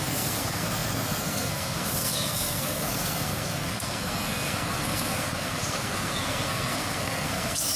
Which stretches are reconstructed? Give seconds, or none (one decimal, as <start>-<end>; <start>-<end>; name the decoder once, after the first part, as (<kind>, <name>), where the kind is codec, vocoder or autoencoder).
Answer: 0.0-7.8 (codec, SNAC)